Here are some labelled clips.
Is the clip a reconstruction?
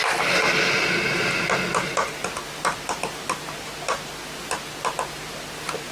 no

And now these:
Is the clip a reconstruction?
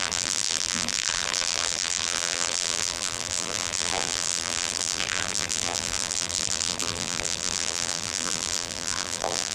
yes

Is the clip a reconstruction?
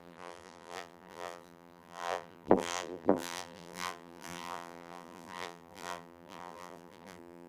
yes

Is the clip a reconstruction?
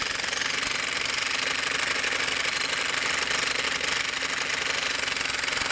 no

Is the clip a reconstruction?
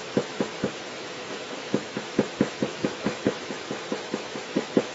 yes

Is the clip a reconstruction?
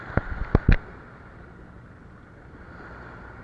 no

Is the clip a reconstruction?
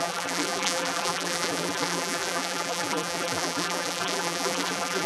yes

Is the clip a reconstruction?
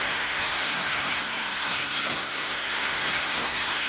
yes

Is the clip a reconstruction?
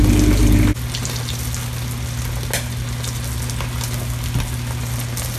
no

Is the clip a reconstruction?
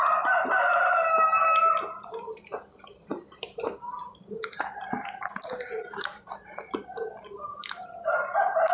yes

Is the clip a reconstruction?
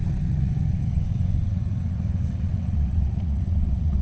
yes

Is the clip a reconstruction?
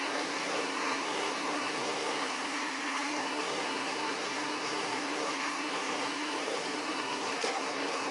yes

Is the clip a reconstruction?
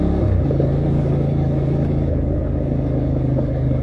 yes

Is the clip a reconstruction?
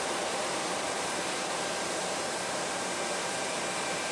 yes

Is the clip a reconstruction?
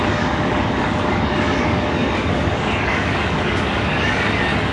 yes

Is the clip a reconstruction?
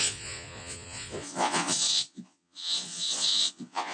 yes